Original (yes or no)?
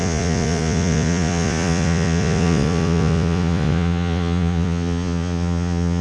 no